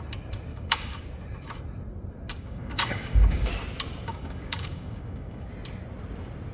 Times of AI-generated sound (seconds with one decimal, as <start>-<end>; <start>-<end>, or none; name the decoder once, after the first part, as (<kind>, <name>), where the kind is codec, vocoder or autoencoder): 0.5-1.0 (codec, DAC); 2.3-3.5; 4.1-5.5